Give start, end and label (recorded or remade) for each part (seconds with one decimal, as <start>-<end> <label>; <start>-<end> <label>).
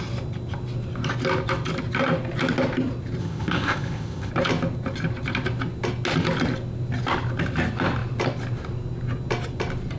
0.0-3.2 recorded; 3.2-4.3 remade; 4.3-10.0 recorded